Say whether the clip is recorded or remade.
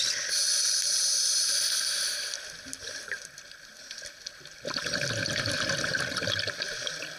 recorded